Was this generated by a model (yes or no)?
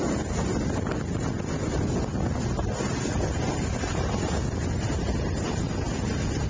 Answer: no